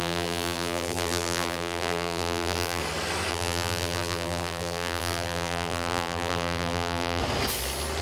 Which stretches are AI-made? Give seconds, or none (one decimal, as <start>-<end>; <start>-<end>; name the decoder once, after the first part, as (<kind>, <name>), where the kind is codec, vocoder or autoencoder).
0.0-2.8 (vocoder, BigVGAN v2); 3.3-7.2